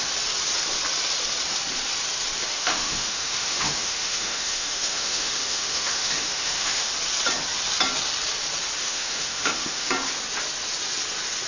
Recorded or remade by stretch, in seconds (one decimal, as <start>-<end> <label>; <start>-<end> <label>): 0.0-2.5 recorded; 2.5-6.9 remade; 6.9-8.8 recorded; 8.8-9.9 remade; 9.9-11.5 recorded

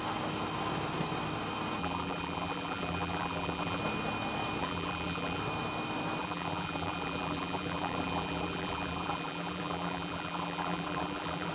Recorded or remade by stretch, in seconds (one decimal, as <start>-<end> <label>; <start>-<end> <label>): 0.0-1.8 recorded; 1.8-3.8 remade; 3.8-4.6 recorded; 4.6-5.4 remade; 5.4-6.2 recorded; 6.2-11.5 remade